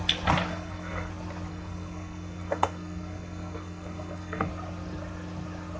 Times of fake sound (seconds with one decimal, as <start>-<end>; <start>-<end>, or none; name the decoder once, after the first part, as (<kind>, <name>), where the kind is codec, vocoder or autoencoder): 0.5-1.1 (codec, SNAC); 1.5-4.5